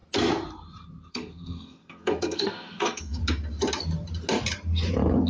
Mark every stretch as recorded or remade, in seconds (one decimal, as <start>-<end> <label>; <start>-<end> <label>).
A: 0.0-1.1 recorded; 1.1-3.2 remade; 3.2-5.3 recorded